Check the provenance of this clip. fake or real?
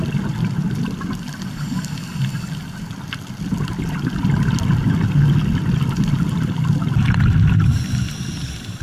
real